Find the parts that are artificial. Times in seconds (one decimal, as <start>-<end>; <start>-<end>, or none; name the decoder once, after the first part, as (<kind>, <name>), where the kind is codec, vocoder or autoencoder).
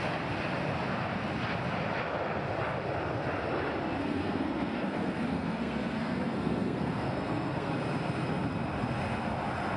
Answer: 4.0-7.7 (codec, SNAC)